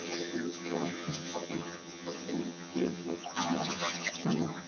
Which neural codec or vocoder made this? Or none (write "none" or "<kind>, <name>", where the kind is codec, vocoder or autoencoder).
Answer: vocoder, HiFi-GAN